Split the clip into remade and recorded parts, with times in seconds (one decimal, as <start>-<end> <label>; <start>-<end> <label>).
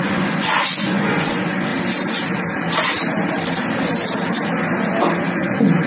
0.0-1.7 remade; 1.7-5.2 recorded; 5.2-5.9 remade